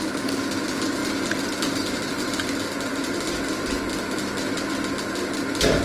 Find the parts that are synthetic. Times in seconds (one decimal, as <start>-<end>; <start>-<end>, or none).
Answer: none